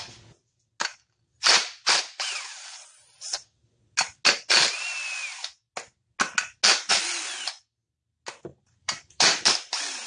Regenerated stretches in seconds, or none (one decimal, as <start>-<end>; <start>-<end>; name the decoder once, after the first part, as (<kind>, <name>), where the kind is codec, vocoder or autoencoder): 0.9-2.0 (vocoder, BigVGAN v2); 8.5-9.5